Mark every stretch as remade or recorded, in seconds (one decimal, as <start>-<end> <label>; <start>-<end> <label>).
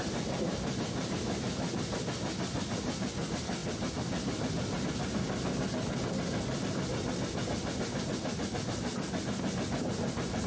0.0-10.5 recorded